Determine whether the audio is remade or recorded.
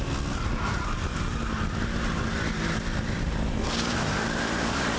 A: recorded